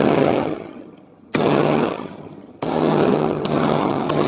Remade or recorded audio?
remade